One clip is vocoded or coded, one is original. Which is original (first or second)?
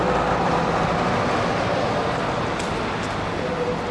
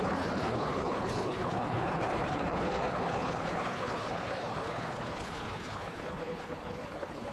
first